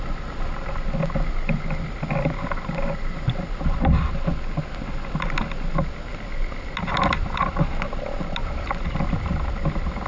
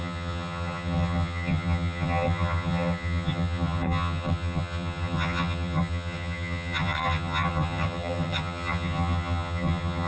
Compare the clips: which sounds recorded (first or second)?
first